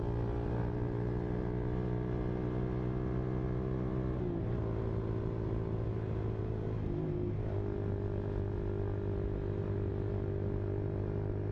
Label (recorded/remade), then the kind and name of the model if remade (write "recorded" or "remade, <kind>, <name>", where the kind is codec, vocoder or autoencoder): recorded